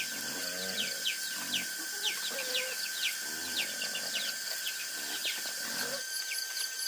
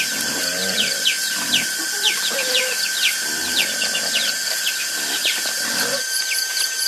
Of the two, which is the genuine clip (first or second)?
first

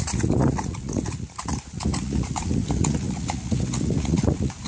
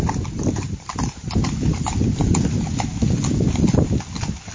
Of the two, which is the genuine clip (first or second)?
second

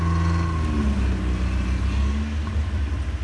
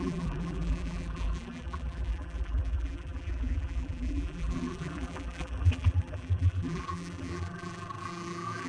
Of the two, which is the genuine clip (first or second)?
first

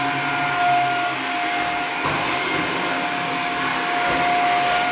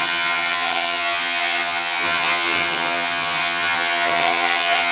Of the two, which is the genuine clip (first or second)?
first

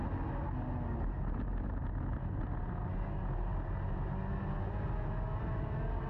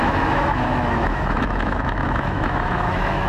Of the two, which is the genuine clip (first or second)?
first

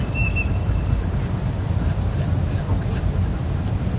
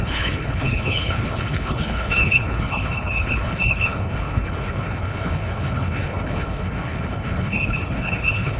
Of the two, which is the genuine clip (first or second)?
first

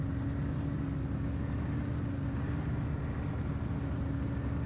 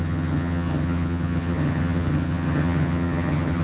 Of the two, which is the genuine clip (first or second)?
first